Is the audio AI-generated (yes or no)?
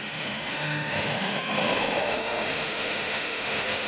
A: yes